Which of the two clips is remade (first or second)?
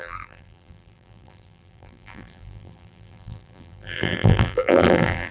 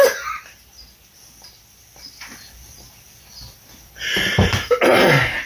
first